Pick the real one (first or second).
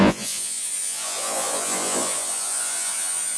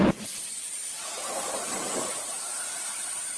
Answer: second